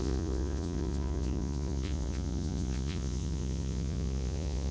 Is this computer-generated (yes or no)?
yes